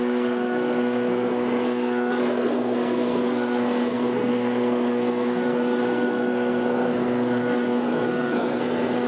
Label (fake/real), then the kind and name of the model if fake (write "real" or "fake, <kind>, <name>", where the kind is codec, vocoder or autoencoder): fake, codec, SNAC